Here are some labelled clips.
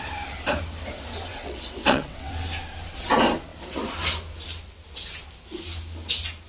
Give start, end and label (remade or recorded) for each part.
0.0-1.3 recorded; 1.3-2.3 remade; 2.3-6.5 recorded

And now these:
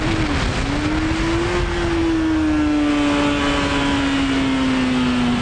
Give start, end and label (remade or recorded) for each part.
0.0-5.4 recorded

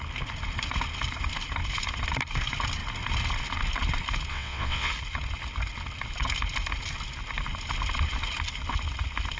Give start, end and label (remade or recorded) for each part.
0.0-4.3 recorded; 4.3-4.9 remade; 4.9-9.4 recorded

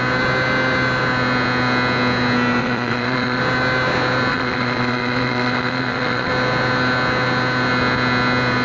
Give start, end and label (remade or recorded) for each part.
0.0-2.6 recorded; 2.6-3.4 remade; 3.4-4.3 recorded; 4.3-6.3 remade; 6.3-8.6 recorded

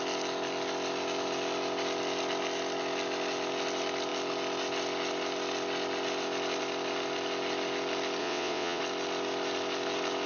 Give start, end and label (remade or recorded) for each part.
0.0-8.2 recorded; 8.2-8.8 remade; 8.8-10.3 recorded

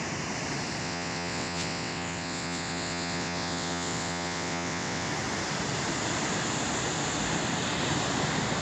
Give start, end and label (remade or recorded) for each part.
0.0-0.8 recorded; 0.8-5.1 remade; 5.1-8.6 recorded

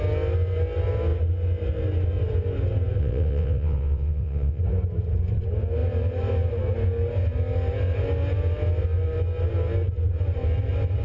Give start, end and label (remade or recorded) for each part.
0.0-3.0 recorded; 3.0-4.6 remade; 4.6-11.0 recorded

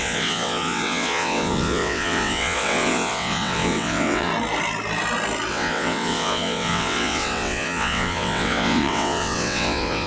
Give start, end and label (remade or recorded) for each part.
0.0-4.3 remade; 4.3-5.5 recorded; 5.5-10.1 remade